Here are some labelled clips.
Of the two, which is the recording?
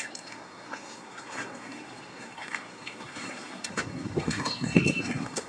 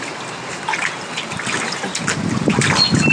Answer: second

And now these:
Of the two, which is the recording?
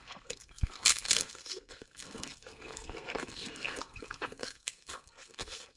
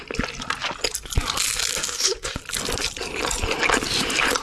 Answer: second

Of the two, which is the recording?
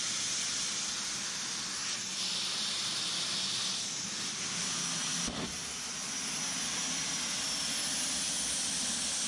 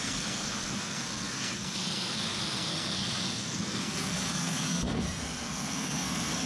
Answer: first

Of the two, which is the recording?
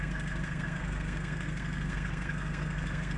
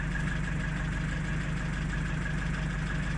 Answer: second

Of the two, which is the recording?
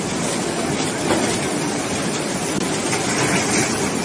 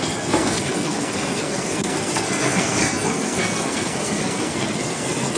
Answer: first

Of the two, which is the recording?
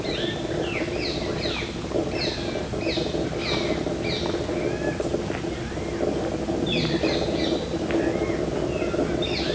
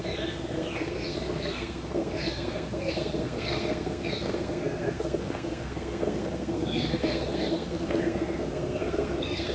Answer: first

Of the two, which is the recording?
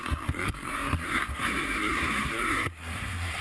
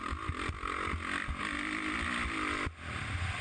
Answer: second